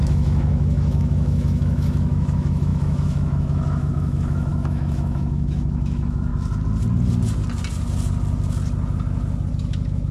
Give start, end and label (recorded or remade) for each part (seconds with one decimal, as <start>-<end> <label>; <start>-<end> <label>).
0.0-6.3 remade; 6.3-9.5 recorded; 9.5-10.1 remade